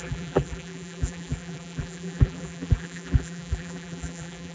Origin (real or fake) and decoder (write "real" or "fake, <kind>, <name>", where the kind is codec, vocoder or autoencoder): fake, vocoder, BigVGAN v2